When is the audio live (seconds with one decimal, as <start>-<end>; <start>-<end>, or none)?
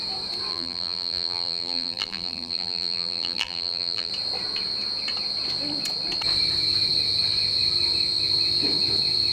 0.0-0.5; 4.1-9.3